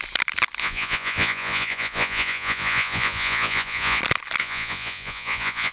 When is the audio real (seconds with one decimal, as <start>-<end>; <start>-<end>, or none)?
0.0-0.6; 4.0-4.4